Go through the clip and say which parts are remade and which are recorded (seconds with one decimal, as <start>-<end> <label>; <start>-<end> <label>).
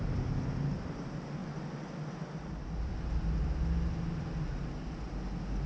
0.0-5.7 recorded